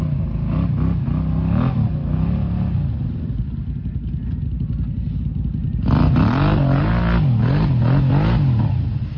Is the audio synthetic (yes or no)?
no